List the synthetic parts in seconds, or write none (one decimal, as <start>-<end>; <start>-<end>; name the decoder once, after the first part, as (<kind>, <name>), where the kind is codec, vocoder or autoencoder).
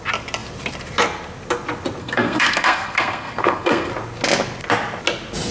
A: 2.0-3.9 (codec, SNAC)